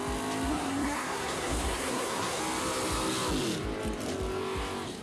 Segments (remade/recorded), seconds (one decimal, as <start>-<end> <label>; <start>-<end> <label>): 0.0-0.5 recorded; 0.5-2.4 remade; 2.4-5.0 recorded